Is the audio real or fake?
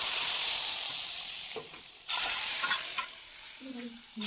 fake